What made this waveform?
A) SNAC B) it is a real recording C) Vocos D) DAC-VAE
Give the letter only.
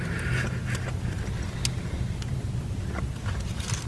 B